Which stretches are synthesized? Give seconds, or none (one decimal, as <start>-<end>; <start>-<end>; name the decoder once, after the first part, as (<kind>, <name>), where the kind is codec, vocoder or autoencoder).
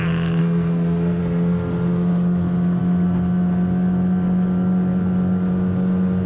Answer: 0.4-1.2 (codec, SNAC)